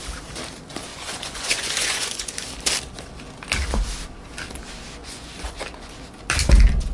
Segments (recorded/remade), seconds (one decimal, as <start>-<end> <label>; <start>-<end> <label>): 0.0-0.9 recorded; 0.9-2.3 remade; 2.3-5.0 recorded; 5.0-5.9 remade; 5.9-6.9 recorded